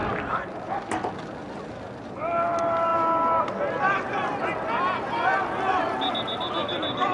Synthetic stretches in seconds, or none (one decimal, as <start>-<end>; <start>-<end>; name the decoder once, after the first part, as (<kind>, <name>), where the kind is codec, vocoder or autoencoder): none